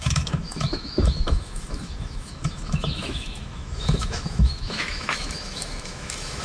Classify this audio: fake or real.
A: fake